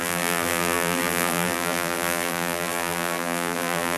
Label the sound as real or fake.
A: fake